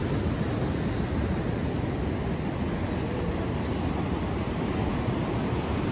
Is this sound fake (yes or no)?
no